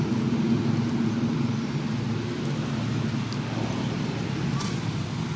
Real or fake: real